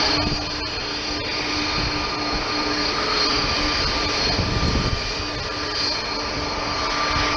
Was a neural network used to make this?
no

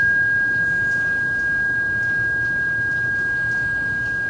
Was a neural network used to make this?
no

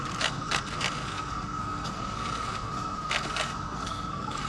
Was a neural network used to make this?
yes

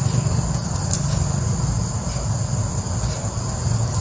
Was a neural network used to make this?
no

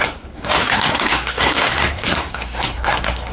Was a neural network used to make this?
yes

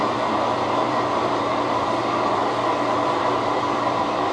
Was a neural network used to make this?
yes